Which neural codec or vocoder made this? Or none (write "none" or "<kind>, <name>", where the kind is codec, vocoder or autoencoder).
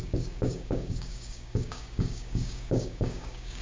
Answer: codec, DAC